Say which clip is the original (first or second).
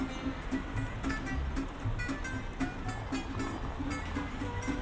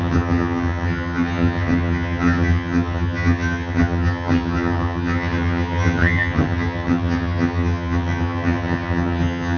first